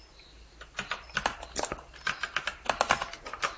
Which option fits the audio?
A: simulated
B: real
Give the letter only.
B